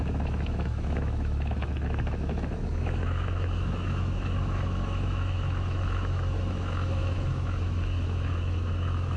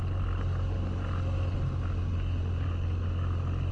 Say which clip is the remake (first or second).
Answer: first